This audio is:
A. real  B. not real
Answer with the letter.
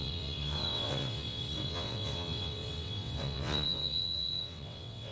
B